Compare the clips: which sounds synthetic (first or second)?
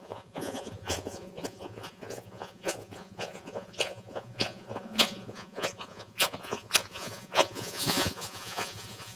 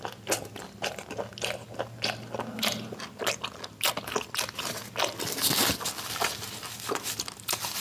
first